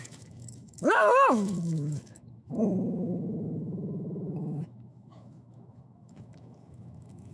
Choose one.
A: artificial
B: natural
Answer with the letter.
A